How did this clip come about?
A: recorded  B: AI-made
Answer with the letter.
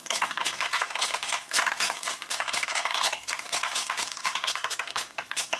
B